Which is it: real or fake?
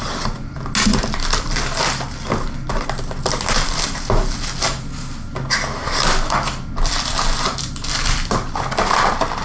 real